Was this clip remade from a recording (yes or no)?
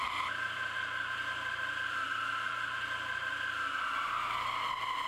yes